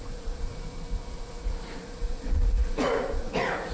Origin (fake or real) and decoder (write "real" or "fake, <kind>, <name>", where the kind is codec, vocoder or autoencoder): fake, vocoder, Vocos